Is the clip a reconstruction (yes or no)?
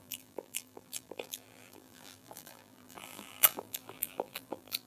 yes